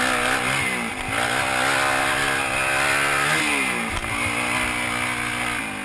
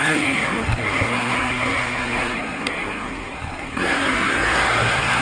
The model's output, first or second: second